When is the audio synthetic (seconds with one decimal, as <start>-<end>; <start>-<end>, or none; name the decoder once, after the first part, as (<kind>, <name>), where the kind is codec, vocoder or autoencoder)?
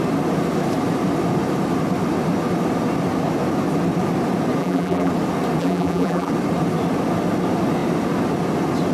4.6-5.1 (vocoder, BigVGAN v2); 5.6-6.3